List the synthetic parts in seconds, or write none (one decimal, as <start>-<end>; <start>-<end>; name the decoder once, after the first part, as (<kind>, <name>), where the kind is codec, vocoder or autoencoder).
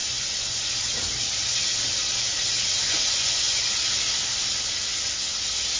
0.0-0.7 (vocoder, Vocos); 2.8-3.6